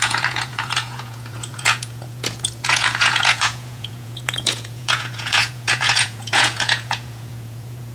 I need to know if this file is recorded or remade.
remade